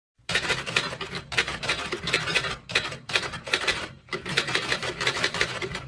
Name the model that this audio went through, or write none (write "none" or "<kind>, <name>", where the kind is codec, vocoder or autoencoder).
vocoder, BigVGAN v2